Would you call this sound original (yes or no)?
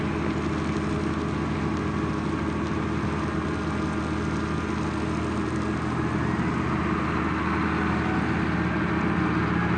yes